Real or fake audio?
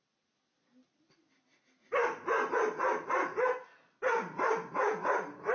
real